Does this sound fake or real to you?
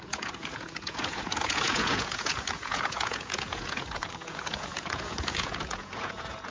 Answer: fake